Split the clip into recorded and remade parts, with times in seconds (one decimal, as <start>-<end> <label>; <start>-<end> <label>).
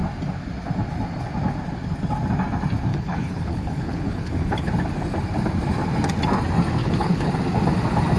0.0-2.9 recorded; 2.9-4.7 remade; 4.7-6.8 recorded; 6.8-7.3 remade; 7.3-8.2 recorded